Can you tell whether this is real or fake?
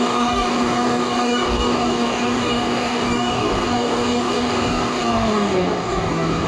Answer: fake